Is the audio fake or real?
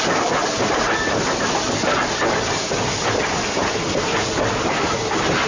real